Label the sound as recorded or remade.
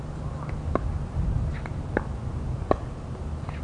recorded